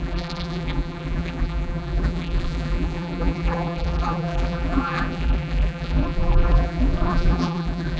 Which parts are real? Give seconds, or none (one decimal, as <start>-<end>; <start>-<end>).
none

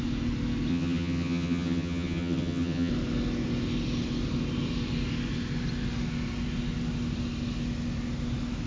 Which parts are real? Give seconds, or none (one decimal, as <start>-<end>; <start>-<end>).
0.0-0.7; 2.9-8.7

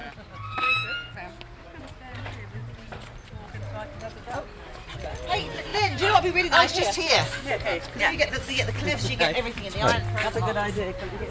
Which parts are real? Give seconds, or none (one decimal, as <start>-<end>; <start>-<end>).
0.0-11.3

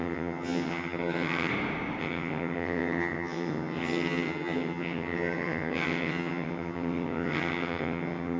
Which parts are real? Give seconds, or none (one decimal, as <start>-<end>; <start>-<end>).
1.5-2.0

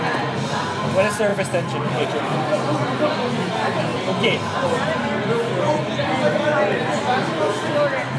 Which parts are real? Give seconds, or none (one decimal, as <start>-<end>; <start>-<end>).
0.0-8.2

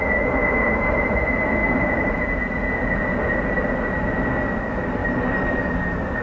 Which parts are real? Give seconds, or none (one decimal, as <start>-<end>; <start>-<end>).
0.0-0.4; 1.2-1.6; 2.4-5.0